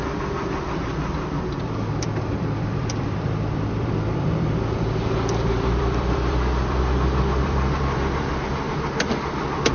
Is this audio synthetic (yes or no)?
yes